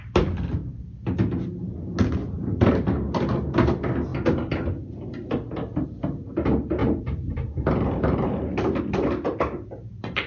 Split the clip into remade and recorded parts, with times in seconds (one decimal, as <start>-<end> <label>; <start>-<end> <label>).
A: 0.0-2.2 recorded; 2.2-2.7 remade; 2.7-6.8 recorded; 6.8-8.8 remade; 8.8-10.3 recorded